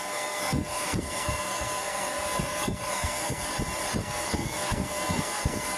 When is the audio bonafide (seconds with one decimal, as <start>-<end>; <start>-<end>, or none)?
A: 3.5-4.0